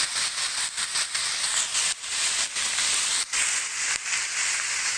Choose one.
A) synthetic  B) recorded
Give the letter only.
B